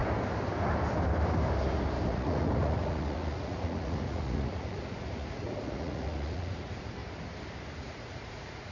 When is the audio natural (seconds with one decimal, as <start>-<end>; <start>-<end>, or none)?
0.0-2.1; 7.0-7.7